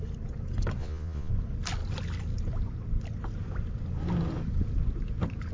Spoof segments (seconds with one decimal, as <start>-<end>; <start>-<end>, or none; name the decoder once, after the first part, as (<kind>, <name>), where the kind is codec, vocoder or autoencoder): 0.8-1.3 (vocoder, Vocos)